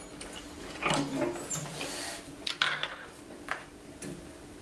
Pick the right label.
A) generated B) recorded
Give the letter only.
B